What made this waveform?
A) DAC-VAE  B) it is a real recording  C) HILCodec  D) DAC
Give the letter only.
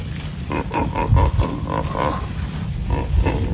B